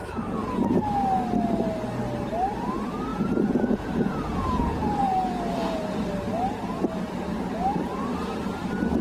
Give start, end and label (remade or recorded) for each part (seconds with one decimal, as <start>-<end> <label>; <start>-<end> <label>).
0.0-0.8 remade; 0.8-3.1 recorded; 3.1-6.1 remade; 6.1-9.0 recorded